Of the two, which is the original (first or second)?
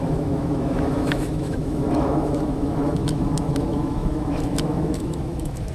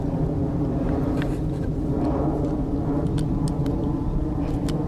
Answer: second